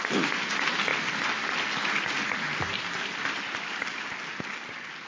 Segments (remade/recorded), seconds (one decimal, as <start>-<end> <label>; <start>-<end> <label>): 0.0-0.9 recorded; 0.9-2.1 remade; 2.1-2.5 recorded; 2.5-5.1 remade